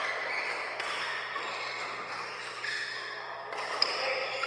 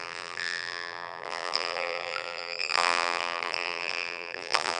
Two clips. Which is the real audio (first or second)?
first